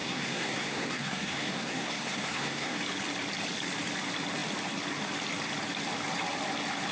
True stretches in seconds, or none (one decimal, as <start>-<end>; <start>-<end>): 2.8-6.9